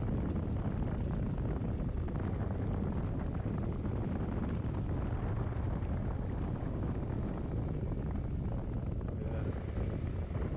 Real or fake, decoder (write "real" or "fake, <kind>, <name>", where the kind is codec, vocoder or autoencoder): real